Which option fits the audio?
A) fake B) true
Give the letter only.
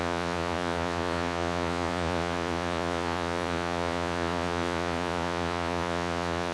A